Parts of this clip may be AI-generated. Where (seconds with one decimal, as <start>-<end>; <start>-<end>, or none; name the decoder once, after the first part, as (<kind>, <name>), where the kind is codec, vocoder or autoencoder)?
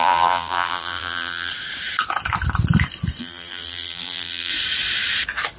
0.0-1.5 (vocoder, BigVGAN v2); 3.2-4.5